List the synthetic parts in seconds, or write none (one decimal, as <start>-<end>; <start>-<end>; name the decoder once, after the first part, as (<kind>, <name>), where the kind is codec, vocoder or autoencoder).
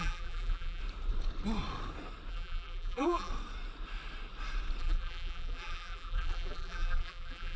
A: 0.0-0.8 (vocoder, BigVGAN v2); 2.3-3.3; 4.8-7.6